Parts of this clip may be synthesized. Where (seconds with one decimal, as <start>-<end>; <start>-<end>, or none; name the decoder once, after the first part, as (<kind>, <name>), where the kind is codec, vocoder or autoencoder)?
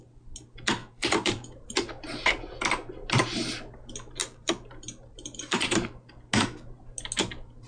0.8-1.9 (vocoder, BigVGAN v2); 4.2-6.1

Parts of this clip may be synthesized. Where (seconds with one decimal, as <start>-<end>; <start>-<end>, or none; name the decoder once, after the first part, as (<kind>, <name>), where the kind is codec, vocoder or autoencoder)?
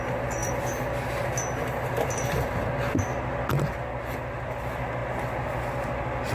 none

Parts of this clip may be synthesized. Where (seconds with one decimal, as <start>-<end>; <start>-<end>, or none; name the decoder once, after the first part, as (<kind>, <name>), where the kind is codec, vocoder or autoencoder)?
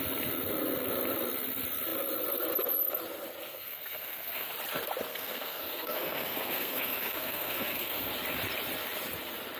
3.5-4.5 (codec, SNAC); 5.1-8.1